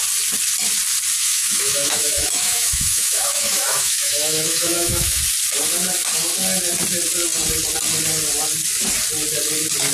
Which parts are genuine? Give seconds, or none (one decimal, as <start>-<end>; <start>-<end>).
0.0-1.2; 5.2-9.9